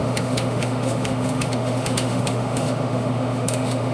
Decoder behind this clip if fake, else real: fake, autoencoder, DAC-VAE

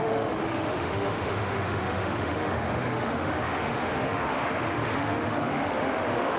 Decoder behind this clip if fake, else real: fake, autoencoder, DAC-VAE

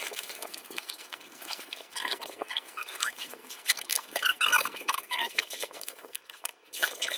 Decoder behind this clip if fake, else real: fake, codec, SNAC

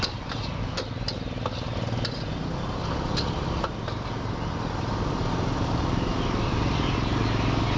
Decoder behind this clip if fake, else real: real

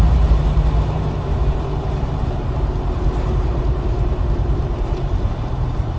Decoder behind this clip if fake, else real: fake, vocoder, BigVGAN v2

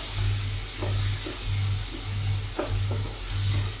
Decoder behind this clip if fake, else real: real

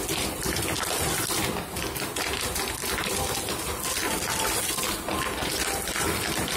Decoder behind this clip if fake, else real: real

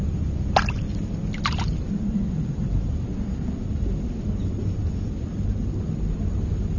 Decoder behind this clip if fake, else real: real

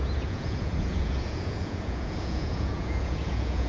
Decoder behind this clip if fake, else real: fake, vocoder, Vocos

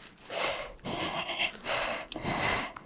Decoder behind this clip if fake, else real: real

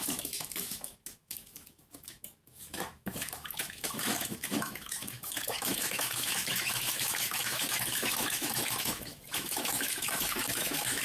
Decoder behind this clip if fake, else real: fake, autoencoder, DAC-VAE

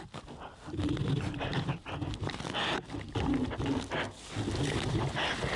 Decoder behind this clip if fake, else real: real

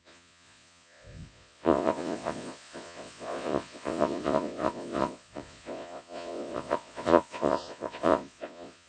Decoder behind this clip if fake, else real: fake, vocoder, Vocos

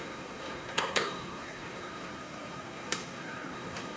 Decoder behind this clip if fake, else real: fake, codec, SNAC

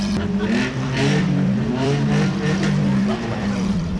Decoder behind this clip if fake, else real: fake, vocoder, BigVGAN v2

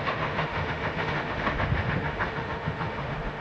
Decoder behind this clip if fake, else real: fake, autoencoder, DAC-VAE